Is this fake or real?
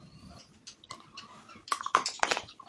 real